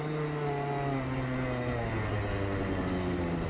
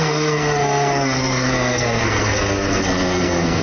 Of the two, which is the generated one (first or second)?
second